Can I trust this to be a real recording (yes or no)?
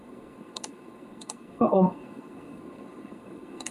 no